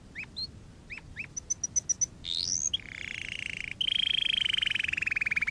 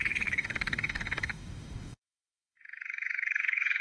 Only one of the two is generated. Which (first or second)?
second